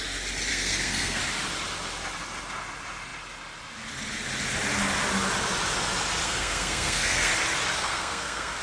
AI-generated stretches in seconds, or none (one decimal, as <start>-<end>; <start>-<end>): 0.5-1.2; 6.2-7.3; 7.8-8.6